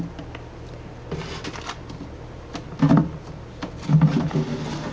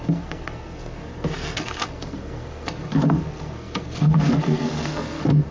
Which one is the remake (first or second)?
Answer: second